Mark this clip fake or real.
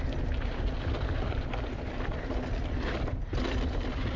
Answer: real